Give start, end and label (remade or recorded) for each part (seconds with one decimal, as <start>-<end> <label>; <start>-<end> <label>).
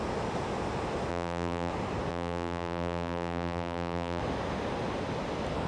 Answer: 0.0-1.1 recorded; 1.1-1.7 remade; 1.7-2.1 recorded; 2.1-4.2 remade; 4.2-5.7 recorded